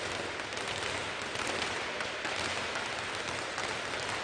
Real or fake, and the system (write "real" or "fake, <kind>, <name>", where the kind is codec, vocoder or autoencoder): real